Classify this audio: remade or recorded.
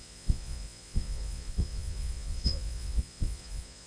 remade